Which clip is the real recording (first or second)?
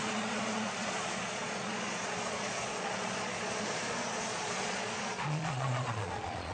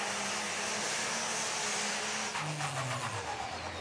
second